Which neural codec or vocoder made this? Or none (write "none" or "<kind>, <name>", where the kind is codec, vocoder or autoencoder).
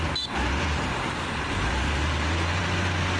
vocoder, BigVGAN v2